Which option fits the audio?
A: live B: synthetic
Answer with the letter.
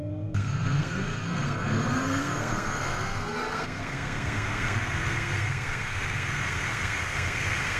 B